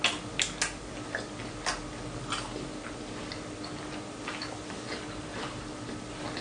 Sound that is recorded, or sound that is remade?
recorded